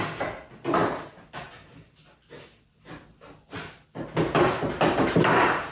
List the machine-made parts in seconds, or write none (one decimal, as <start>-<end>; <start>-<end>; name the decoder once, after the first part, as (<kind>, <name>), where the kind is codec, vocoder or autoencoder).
none

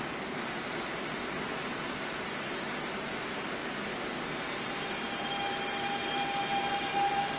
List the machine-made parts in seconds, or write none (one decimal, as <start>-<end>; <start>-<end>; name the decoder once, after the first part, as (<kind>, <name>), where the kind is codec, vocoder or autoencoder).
none